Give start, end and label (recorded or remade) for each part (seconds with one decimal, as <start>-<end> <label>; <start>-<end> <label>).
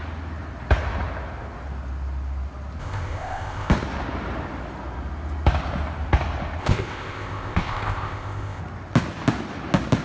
0.0-2.8 recorded; 2.8-3.7 remade; 3.7-6.6 recorded; 6.6-8.6 remade; 8.6-10.0 recorded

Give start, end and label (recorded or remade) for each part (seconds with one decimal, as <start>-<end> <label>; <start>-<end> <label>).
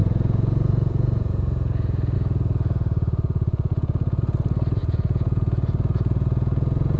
0.0-4.2 remade; 4.2-4.8 recorded; 4.8-7.0 remade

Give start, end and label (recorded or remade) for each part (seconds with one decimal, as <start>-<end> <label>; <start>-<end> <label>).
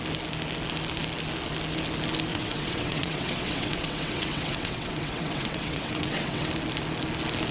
0.0-2.3 recorded; 2.3-6.5 remade; 6.5-7.5 recorded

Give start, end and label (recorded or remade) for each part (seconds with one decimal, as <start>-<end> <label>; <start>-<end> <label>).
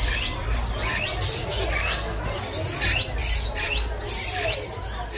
0.0-5.2 recorded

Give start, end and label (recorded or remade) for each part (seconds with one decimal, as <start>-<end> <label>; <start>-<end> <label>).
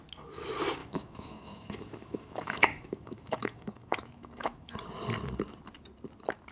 0.0-0.8 recorded; 0.8-4.7 remade; 4.7-6.5 recorded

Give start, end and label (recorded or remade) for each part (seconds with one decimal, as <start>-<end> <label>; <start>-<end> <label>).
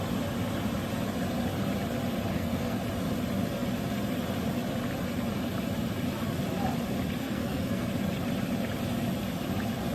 0.0-2.3 recorded; 2.3-2.8 remade; 2.8-7.2 recorded; 7.2-7.9 remade; 7.9-9.9 recorded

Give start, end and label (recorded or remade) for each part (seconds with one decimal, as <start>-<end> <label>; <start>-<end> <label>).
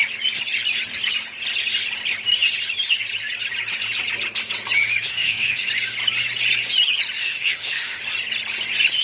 0.0-5.1 recorded; 5.1-5.7 remade; 5.7-7.2 recorded; 7.2-8.0 remade; 8.0-9.0 recorded